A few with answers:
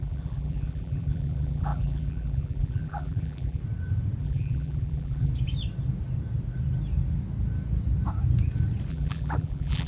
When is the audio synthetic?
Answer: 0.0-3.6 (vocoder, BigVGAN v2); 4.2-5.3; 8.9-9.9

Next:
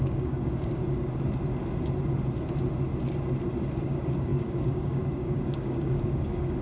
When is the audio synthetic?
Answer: 0.0-0.8 (codec, DAC); 3.8-6.6

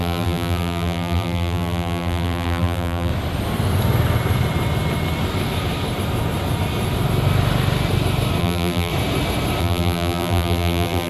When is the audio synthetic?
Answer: 0.0-3.1 (vocoder, BigVGAN v2); 8.4-8.9; 9.6-11.1

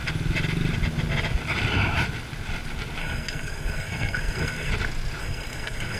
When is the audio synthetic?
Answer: 3.0-4.7 (codec, SNAC); 5.2-6.0

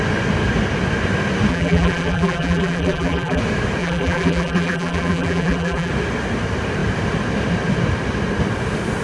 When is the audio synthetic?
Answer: 1.5-3.4 (vocoder, BigVGAN v2); 3.8-5.9

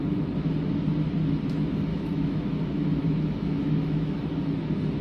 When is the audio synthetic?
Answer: 1.9-4.2 (autoencoder, DAC-VAE)

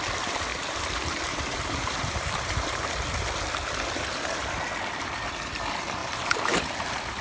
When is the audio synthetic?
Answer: 0.5-2.9 (vocoder, BigVGAN v2); 6.0-6.6

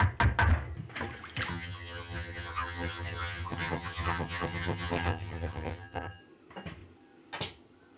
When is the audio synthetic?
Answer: 1.5-6.2 (vocoder, HiFi-GAN)